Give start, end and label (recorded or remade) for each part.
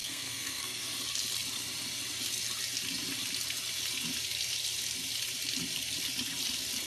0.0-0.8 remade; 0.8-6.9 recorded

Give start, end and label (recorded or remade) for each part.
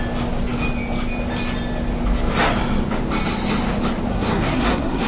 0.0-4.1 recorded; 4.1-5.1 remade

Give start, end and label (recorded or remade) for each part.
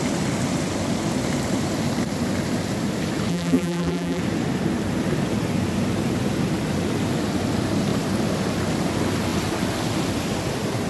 0.0-3.3 recorded; 3.3-4.2 remade; 4.2-10.9 recorded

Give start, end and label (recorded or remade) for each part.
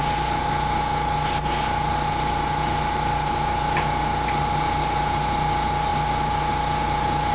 0.0-7.3 recorded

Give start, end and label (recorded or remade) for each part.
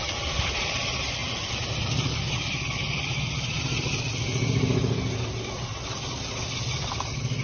0.0-7.4 recorded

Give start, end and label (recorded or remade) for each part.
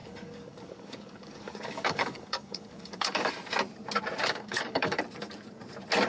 0.0-3.3 remade; 3.3-4.2 recorded; 4.2-5.0 remade; 5.0-6.1 recorded